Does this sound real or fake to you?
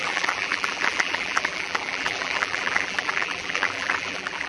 fake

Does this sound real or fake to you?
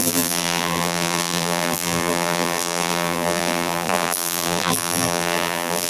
fake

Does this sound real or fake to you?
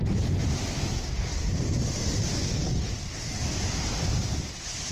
real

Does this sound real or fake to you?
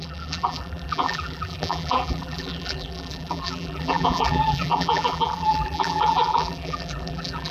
fake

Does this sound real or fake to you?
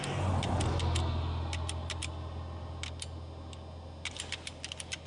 real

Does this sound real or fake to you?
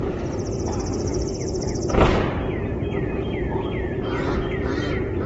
fake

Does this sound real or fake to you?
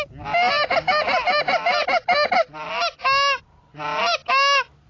real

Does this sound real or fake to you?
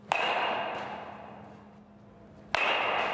real